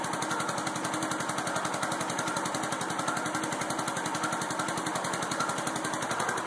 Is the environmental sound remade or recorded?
recorded